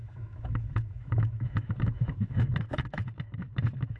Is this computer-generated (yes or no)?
yes